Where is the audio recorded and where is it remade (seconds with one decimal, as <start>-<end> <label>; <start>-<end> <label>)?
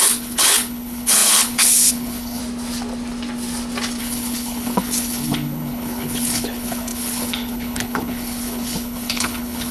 0.0-2.4 remade; 2.4-4.0 recorded; 4.0-9.7 remade